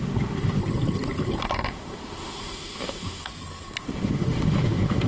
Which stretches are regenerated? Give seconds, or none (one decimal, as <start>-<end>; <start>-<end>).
0.0-0.6; 1.7-3.3; 3.8-5.1